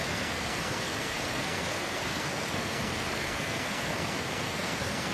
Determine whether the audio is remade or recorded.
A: remade